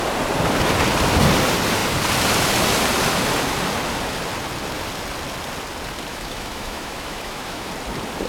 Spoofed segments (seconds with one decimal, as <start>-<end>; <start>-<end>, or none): 6.1-7.7